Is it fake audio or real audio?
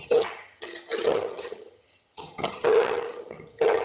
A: fake